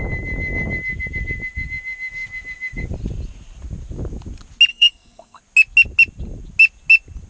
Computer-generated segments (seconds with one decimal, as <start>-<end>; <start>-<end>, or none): 4.7-5.4